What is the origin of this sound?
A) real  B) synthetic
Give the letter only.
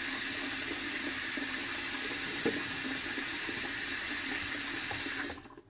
A